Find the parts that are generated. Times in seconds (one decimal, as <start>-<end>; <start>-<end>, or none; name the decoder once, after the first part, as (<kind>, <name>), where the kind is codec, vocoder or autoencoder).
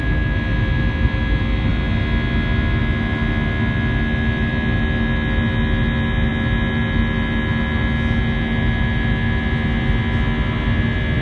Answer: none